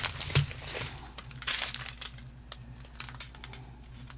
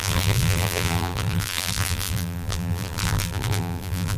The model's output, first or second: second